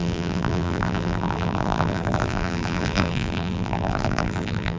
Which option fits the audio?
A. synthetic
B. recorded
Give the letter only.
A